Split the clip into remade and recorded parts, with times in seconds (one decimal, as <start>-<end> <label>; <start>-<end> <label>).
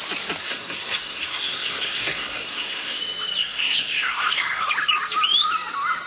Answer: 0.0-0.4 recorded; 0.4-3.0 remade; 3.0-3.4 recorded; 3.4-4.7 remade; 4.7-6.1 recorded